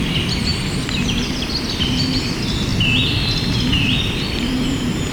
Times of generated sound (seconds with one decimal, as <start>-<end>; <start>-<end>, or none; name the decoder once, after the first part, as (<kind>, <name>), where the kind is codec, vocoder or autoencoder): none